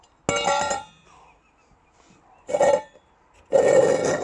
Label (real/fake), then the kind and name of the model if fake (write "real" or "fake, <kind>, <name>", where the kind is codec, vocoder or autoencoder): real